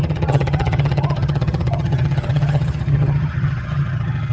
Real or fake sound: fake